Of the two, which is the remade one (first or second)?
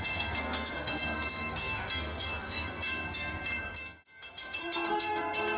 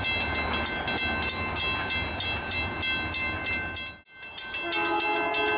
first